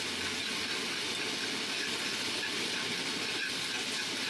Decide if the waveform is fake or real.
real